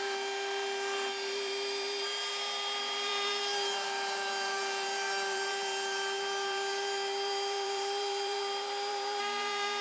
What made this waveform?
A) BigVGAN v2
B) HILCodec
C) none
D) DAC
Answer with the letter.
A